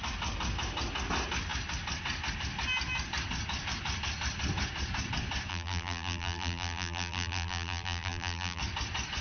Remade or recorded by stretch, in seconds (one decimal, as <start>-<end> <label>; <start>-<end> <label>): 0.0-5.5 recorded; 5.5-8.6 remade; 8.6-9.2 recorded